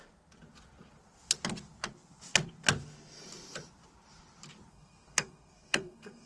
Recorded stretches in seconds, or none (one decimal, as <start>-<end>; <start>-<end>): 0.0-4.7